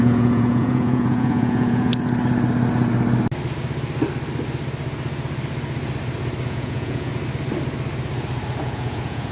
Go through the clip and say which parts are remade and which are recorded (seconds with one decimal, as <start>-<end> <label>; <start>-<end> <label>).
0.0-1.9 remade; 1.9-6.5 recorded; 6.5-7.1 remade; 7.1-8.6 recorded; 8.6-9.3 remade